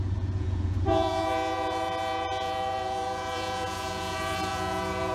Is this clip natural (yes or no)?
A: no